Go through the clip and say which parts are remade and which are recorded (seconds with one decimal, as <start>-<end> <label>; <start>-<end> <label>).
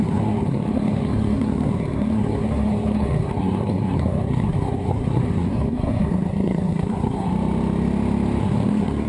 0.0-7.3 remade; 7.3-8.4 recorded; 8.4-9.1 remade